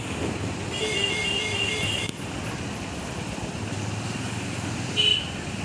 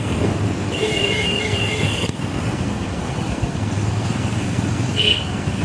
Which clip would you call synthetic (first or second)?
second